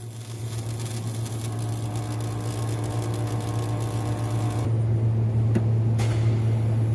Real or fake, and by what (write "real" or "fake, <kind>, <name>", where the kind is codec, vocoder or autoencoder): real